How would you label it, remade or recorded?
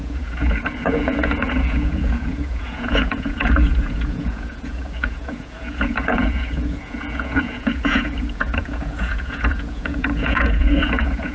remade